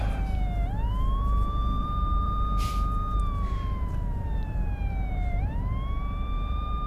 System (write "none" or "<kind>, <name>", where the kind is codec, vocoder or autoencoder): vocoder, BigVGAN v2